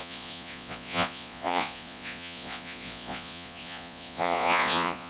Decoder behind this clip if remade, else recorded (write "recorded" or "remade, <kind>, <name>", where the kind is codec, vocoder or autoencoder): remade, vocoder, Vocos